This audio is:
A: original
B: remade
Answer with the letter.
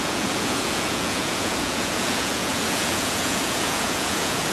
B